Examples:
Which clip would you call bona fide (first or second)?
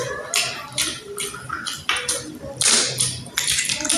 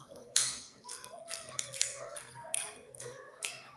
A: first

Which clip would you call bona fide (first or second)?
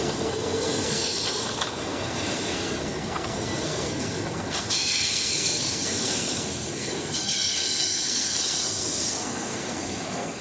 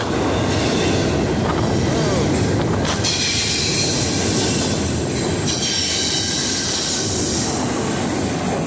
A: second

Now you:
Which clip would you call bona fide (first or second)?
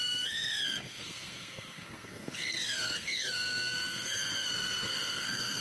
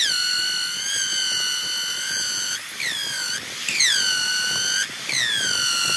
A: second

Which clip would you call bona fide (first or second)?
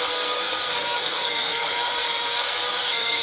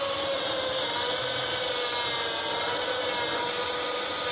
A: second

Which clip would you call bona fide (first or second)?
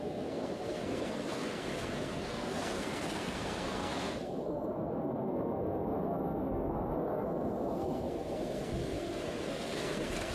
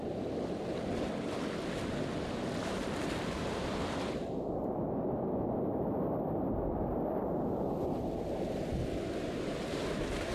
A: second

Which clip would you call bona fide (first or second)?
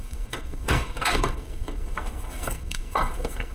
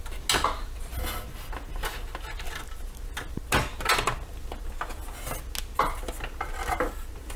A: second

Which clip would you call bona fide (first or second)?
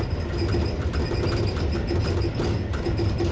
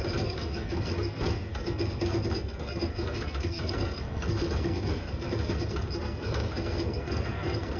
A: first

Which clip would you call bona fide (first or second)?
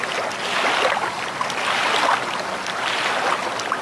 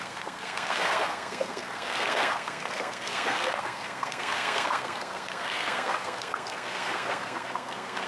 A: first